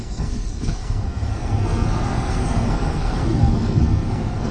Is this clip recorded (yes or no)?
no